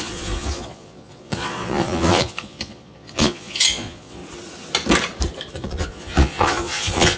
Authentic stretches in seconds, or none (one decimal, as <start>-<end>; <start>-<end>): 4.2-5.5